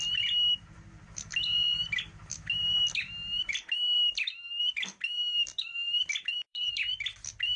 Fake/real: fake